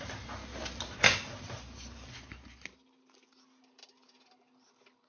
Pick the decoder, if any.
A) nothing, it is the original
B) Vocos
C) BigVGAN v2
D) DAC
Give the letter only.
A